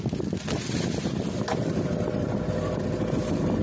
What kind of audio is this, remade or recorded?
recorded